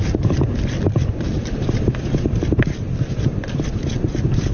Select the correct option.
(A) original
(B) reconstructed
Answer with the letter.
A